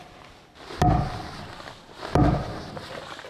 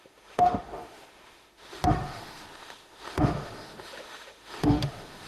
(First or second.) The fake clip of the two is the second